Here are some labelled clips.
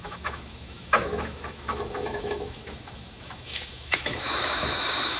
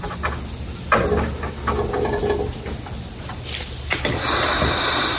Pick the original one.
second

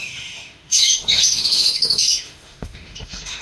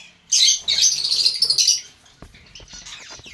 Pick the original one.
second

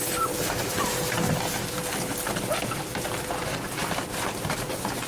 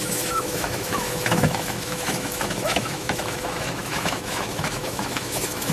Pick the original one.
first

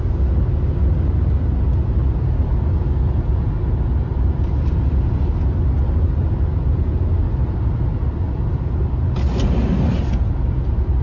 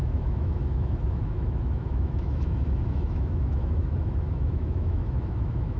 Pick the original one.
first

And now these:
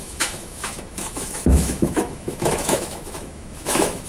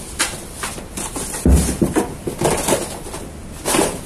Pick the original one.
second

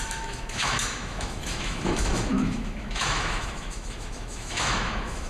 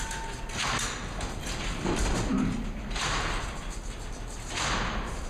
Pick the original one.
second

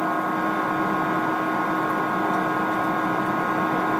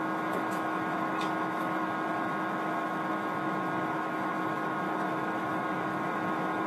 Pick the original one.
first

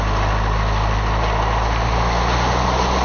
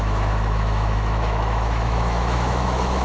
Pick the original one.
first